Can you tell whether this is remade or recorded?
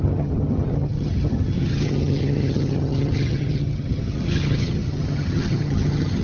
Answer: remade